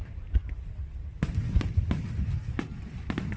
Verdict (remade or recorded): recorded